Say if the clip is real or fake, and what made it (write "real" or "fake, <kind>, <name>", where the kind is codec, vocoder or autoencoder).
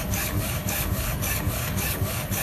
fake, codec, DAC